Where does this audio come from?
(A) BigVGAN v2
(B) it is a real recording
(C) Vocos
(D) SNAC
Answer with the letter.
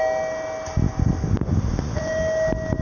B